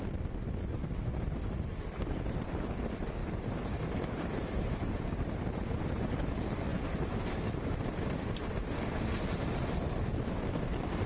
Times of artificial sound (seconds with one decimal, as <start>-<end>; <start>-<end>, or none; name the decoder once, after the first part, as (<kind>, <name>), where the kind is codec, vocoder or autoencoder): 3.2-5.2 (vocoder, BigVGAN v2); 6.7-7.5